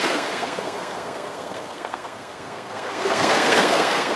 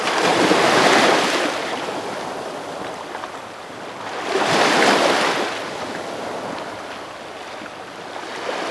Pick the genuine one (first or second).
second